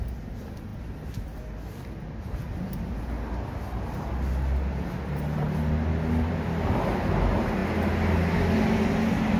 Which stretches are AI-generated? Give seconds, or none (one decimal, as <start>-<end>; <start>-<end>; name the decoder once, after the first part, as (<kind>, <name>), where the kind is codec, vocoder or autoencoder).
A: none